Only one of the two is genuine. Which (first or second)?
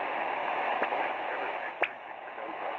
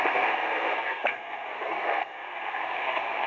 first